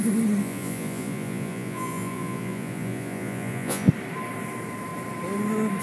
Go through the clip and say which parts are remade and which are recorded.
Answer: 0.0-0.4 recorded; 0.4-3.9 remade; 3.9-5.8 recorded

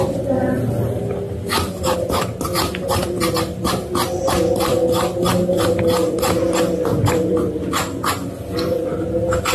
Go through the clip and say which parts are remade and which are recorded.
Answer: 0.0-9.5 recorded

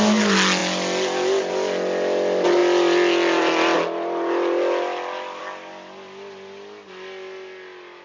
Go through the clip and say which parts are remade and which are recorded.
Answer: 0.0-8.0 recorded

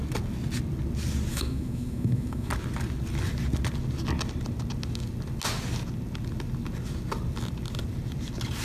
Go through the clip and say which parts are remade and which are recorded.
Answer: 0.0-1.3 recorded; 1.3-2.5 remade; 2.5-8.6 recorded

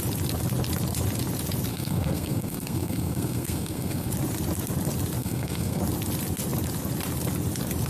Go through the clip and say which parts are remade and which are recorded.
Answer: 0.0-1.7 recorded; 1.7-4.1 remade; 4.1-5.2 recorded; 5.2-5.8 remade; 5.8-7.9 recorded

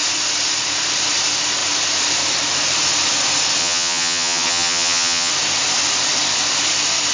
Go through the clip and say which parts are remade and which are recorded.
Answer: 0.0-3.6 recorded; 3.6-5.3 remade; 5.3-7.1 recorded

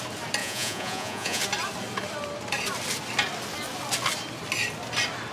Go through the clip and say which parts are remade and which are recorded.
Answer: 0.0-0.4 recorded; 0.4-1.4 remade; 1.4-5.3 recorded

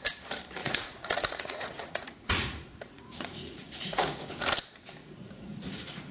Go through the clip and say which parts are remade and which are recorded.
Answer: 0.0-0.6 recorded; 0.6-4.3 remade; 4.3-5.0 recorded; 5.0-6.1 remade